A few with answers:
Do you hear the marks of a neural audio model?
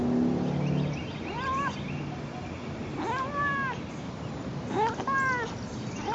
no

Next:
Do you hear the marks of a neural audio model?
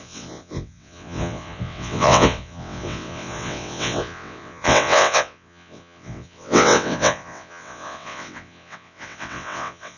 yes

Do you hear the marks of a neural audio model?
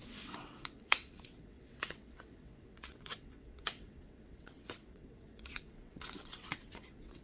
yes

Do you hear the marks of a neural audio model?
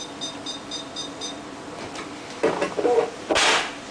no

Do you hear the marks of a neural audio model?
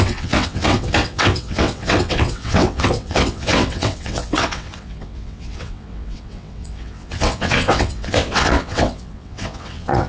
yes